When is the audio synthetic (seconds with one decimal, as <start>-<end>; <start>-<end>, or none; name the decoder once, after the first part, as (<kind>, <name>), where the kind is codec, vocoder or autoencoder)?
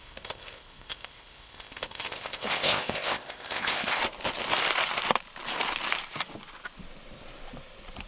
0.0-4.0 (codec, ZipCodec)